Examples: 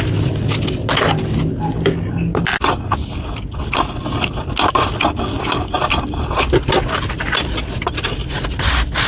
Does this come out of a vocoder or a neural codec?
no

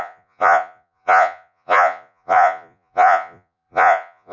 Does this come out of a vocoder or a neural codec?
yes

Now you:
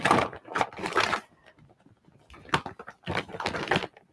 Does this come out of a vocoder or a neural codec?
no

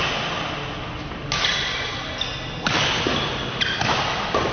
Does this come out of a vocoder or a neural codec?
no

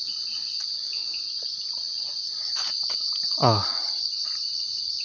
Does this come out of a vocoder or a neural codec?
no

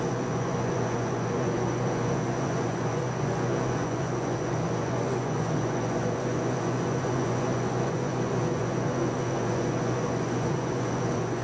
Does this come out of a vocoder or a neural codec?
yes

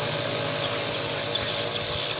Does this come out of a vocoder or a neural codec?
no